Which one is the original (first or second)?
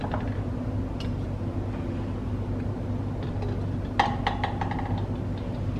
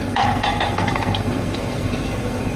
first